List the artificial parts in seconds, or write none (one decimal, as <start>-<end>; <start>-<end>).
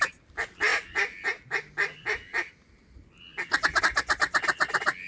none